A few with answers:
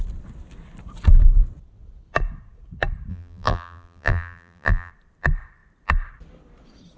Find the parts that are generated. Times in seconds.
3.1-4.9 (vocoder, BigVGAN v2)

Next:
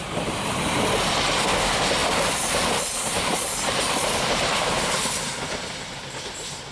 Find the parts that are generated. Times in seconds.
2.0-5.6 (vocoder, BigVGAN v2)

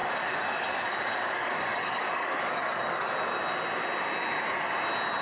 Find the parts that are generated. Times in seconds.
0.0-3.1 (codec, DAC)